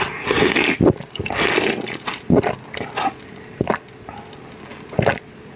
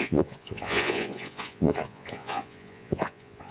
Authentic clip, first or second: first